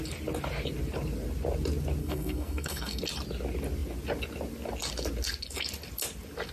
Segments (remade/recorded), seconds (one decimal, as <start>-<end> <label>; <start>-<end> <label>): 0.0-2.0 recorded; 2.0-3.0 remade; 3.0-6.5 recorded